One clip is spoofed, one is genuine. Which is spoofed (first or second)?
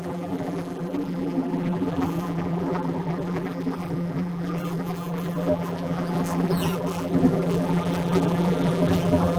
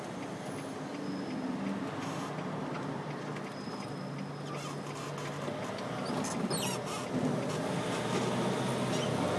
first